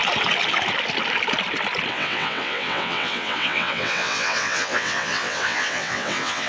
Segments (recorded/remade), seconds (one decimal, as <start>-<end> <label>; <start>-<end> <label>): 0.0-1.9 recorded; 1.9-6.5 remade